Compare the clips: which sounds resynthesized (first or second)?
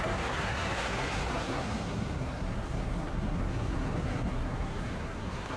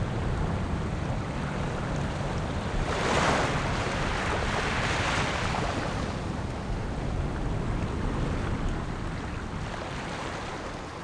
first